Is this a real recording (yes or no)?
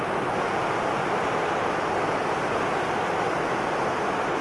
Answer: yes